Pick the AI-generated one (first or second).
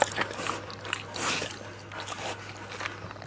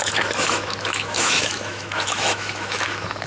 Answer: second